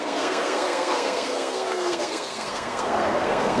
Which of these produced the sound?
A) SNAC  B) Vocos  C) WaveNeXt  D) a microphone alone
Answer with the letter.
A